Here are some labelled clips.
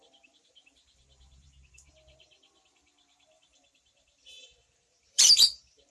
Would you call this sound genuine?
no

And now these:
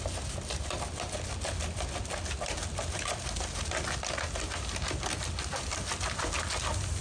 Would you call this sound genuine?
yes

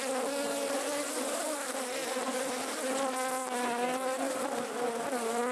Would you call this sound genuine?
yes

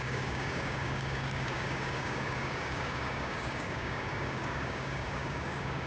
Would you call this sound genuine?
no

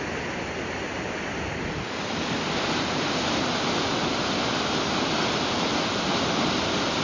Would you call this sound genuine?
yes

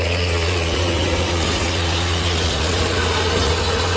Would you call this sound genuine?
no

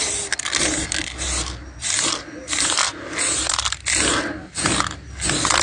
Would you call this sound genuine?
yes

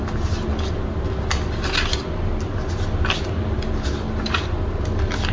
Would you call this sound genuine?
yes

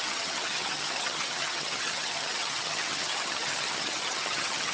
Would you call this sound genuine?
no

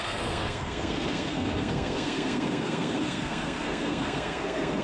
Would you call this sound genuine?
no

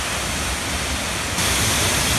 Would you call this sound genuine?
yes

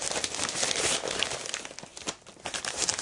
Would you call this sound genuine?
yes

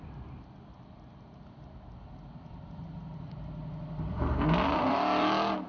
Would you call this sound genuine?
no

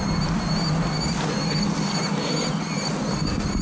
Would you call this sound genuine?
yes